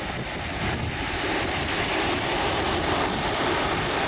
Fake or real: real